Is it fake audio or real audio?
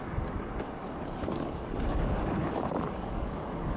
fake